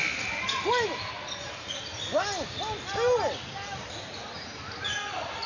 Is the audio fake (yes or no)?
no